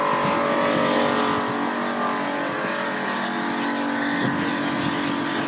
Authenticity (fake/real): real